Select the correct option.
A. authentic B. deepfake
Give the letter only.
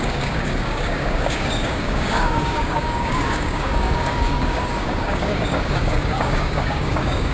B